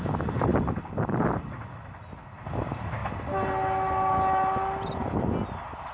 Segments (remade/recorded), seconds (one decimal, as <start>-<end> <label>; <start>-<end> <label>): 0.0-5.9 recorded